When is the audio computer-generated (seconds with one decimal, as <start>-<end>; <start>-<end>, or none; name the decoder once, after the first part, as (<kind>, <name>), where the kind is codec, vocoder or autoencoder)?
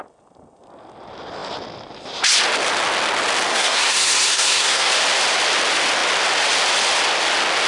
3.5-4.9 (codec, SNAC)